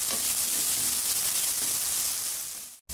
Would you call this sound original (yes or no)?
yes